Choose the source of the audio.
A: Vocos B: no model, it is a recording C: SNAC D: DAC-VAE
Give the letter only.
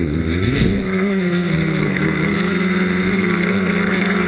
C